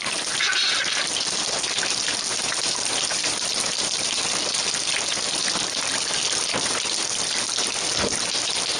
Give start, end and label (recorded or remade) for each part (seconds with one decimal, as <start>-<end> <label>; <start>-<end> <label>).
0.0-8.8 recorded